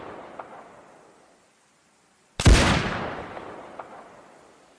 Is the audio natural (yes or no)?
yes